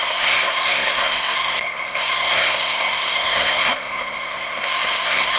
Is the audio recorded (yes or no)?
no